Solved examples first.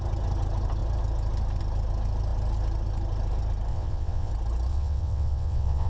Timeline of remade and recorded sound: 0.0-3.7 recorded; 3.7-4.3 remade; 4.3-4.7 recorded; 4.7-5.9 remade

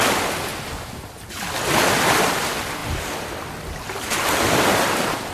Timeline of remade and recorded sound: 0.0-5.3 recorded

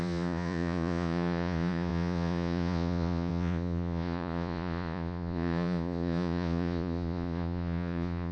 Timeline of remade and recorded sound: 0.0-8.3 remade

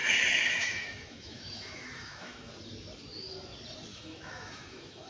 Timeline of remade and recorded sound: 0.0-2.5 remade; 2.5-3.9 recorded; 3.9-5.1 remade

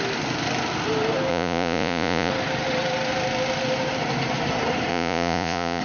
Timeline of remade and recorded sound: 0.0-1.3 recorded; 1.3-2.3 remade; 2.3-4.9 recorded; 4.9-5.8 remade